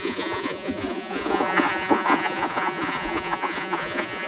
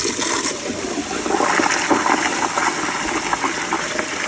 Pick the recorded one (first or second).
second